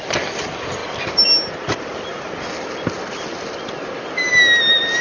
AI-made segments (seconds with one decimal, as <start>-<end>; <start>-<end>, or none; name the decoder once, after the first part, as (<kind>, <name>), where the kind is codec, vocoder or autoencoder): none